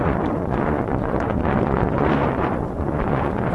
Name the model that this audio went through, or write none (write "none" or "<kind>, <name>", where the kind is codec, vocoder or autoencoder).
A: vocoder, Vocos